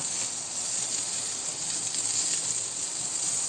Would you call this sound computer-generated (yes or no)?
no